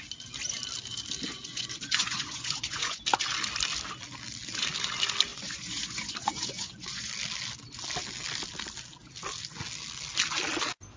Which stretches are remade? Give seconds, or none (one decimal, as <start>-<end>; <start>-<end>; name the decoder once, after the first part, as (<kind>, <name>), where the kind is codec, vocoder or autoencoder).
1.3-3.0 (vocoder, Vocos); 5.3-7.1